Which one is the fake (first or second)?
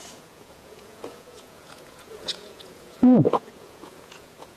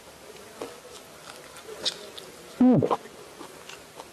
first